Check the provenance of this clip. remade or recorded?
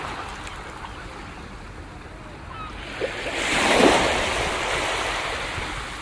recorded